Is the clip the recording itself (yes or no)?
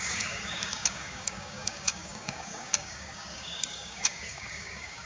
no